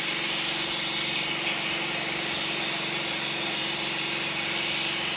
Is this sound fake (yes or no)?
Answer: no